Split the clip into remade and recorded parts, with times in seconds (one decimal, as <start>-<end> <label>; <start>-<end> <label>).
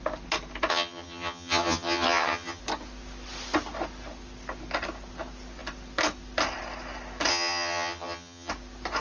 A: 0.0-0.7 recorded; 0.7-2.6 remade; 2.6-7.3 recorded; 7.3-8.5 remade; 8.5-9.0 recorded